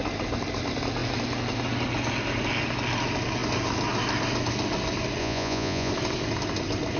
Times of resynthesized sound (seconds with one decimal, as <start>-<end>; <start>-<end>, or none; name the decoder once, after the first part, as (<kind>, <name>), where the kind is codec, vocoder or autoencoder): 5.2-5.9 (vocoder, Vocos)